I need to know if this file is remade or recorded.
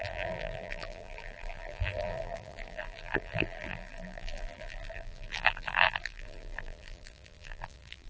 remade